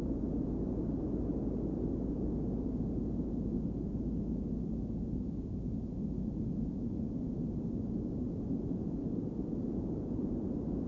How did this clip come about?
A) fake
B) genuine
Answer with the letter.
B